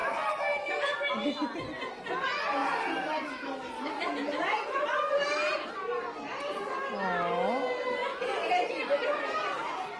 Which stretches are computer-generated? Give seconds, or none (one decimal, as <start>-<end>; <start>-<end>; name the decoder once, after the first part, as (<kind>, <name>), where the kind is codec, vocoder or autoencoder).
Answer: 2.6-6.2 (vocoder, BigVGAN v2); 8.0-9.2